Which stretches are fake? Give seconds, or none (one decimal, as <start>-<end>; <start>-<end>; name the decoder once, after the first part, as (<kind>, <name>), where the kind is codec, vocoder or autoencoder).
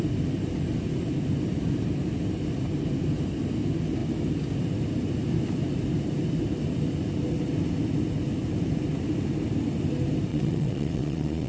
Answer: 10.3-11.5 (vocoder, Vocos)